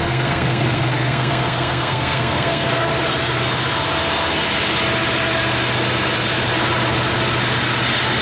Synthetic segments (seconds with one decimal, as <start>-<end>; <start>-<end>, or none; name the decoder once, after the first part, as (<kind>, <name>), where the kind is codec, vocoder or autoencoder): 0.0-2.9 (codec, SNAC)